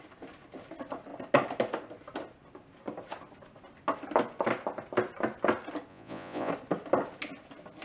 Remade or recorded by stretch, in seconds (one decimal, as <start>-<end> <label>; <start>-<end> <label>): 0.0-5.9 recorded; 5.9-6.5 remade; 6.5-7.8 recorded